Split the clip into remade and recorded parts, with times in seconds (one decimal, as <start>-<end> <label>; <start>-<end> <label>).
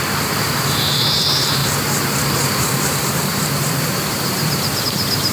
0.0-5.3 remade